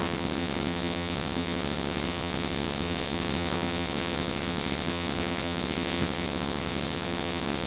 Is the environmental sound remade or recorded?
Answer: remade